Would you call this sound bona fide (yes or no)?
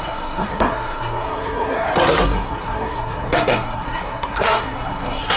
no